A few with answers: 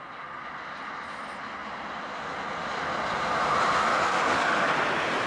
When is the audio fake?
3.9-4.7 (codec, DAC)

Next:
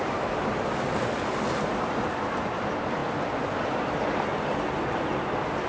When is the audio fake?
none

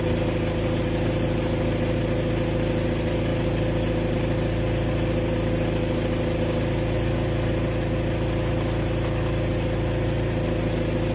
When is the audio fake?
none

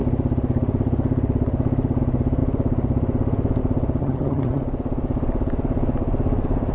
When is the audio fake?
4.0-4.6 (vocoder, HiFi-GAN)

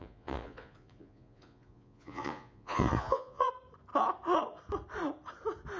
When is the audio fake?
0.0-3.5 (vocoder, Vocos)

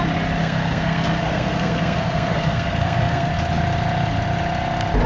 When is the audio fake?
0.4-3.3 (codec, SNAC)

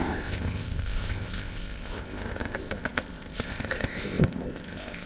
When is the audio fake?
0.0-5.1 (codec, ZipCodec)

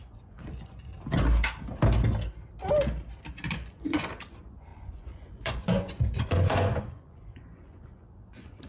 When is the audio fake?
0.0-0.9 (vocoder, Vocos); 3.3-8.7